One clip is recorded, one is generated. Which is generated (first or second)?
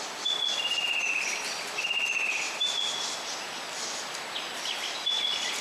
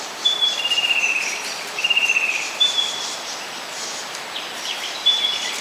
second